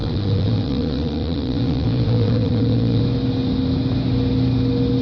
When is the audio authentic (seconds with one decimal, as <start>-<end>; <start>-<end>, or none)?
3.0-5.0

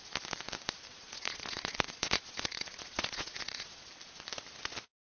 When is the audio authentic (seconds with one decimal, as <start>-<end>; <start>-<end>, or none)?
0.0-0.9; 3.9-5.0